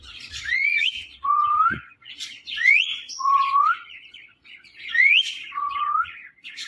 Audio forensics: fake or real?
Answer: fake